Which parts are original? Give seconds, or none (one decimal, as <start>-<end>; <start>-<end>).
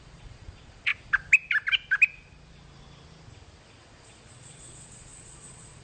0.9-3.6